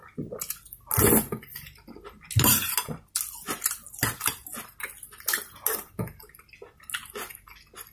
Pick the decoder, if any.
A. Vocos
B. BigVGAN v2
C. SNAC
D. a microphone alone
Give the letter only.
D